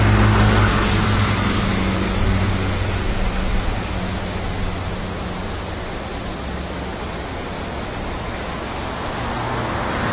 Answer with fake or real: real